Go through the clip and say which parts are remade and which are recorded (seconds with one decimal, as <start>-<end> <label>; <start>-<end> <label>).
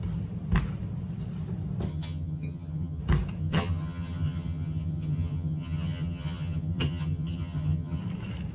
0.0-1.9 recorded; 1.9-3.0 remade; 3.0-3.4 recorded; 3.4-8.0 remade; 8.0-8.5 recorded